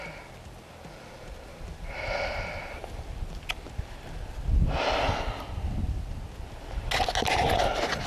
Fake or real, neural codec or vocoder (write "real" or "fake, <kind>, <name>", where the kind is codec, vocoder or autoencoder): real